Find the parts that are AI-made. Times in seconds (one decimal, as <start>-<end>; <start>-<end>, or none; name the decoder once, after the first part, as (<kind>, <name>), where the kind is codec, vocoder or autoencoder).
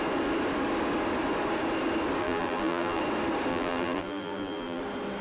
2.2-3.0 (vocoder, BigVGAN v2); 3.5-4.8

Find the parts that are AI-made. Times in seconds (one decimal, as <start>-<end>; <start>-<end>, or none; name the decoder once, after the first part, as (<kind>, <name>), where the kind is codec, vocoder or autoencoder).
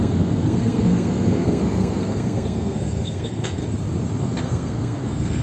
0.0-3.6 (codec, SNAC); 4.2-5.4